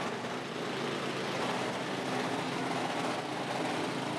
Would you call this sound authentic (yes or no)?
yes